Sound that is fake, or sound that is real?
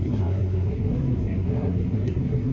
fake